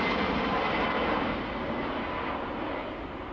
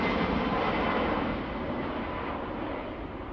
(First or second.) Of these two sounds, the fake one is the second